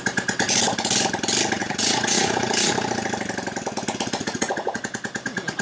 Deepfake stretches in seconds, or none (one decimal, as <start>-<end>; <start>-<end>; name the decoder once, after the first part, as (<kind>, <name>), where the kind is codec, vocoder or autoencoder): 1.6-2.7 (vocoder, Vocos); 4.2-4.8